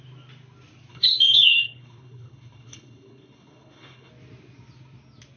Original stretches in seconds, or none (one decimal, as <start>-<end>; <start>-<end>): 0.0-0.9; 4.1-5.4